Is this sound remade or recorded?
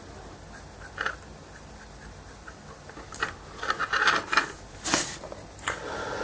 recorded